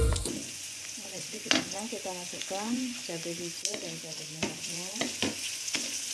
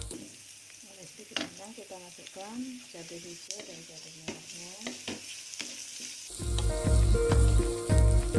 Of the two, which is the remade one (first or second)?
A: first